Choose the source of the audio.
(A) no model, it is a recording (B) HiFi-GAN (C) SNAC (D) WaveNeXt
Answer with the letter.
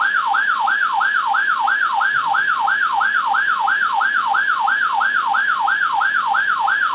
A